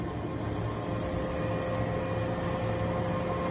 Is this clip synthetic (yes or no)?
no